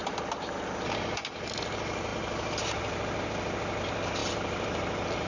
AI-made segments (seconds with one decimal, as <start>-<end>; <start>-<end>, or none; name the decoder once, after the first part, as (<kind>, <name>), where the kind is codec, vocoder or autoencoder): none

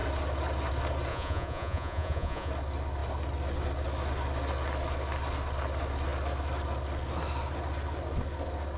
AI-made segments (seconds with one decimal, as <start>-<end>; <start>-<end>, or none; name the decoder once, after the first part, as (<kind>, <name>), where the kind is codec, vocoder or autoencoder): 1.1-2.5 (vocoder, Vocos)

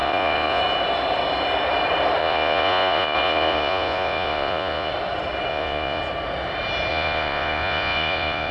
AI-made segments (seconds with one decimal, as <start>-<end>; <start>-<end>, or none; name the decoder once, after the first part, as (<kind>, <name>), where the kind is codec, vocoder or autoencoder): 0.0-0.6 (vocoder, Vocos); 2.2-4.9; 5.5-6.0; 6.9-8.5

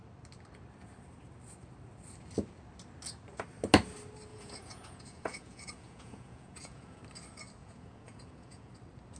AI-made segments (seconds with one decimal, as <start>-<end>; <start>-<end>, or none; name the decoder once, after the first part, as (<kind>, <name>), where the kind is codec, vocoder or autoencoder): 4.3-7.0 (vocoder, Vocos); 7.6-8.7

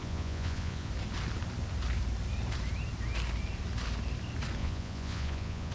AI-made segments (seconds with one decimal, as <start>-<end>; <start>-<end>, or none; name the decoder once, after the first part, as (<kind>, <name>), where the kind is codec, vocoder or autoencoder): 0.0-0.9 (vocoder, Vocos); 4.6-5.7

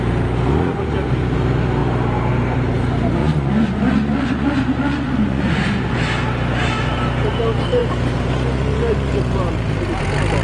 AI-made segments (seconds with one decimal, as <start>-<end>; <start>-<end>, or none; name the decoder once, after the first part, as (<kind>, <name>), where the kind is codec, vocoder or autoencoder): 3.2-5.9 (vocoder, Vocos)

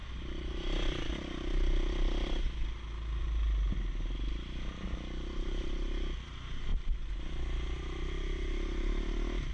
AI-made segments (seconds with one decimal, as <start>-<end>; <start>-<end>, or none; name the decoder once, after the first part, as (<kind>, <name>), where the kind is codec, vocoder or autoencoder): none